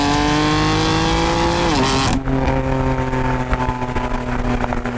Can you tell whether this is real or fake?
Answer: real